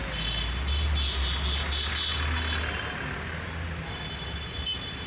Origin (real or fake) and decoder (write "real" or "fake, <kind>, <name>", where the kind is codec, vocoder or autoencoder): real